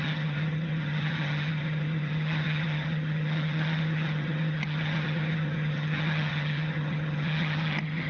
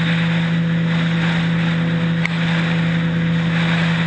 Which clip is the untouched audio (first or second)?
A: second